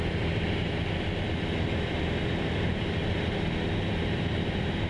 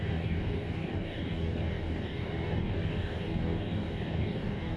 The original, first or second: first